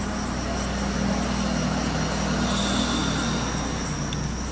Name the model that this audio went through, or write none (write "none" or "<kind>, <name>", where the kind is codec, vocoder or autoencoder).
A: none